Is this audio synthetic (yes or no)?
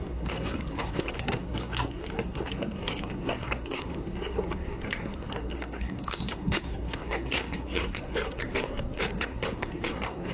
yes